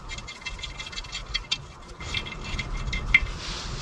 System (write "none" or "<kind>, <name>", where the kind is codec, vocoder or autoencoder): none